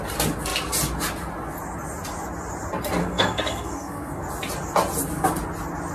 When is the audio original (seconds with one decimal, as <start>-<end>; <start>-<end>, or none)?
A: 0.0-3.0; 4.2-5.9